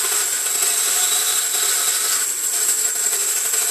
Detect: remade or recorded recorded